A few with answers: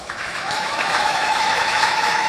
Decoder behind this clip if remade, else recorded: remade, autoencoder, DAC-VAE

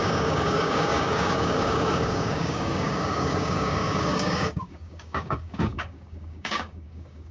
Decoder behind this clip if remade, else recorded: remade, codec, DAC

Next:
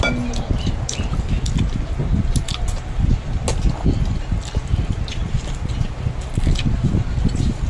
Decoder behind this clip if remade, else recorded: recorded